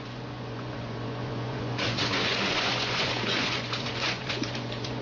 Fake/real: fake